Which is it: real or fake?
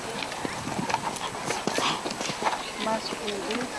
real